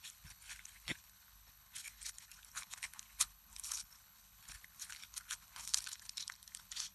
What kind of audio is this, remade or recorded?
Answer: remade